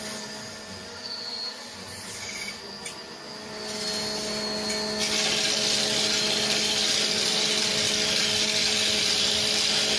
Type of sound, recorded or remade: recorded